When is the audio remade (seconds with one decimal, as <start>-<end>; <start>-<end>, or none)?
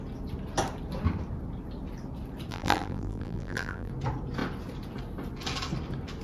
2.5-3.9